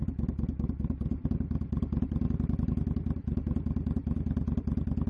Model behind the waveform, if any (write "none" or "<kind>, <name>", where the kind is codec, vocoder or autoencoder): none